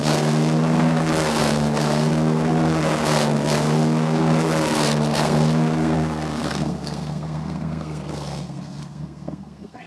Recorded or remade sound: remade